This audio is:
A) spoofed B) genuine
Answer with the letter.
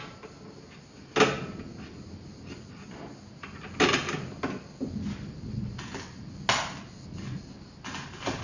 B